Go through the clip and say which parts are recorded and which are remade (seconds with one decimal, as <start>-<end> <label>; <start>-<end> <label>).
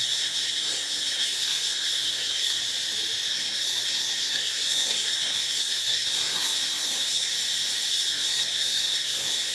0.0-2.6 remade; 2.6-3.3 recorded; 3.3-7.3 remade; 7.3-7.9 recorded; 7.9-9.5 remade